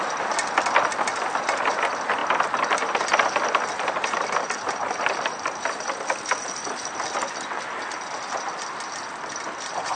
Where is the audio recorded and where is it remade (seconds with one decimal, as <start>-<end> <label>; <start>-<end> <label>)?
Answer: 0.0-10.0 recorded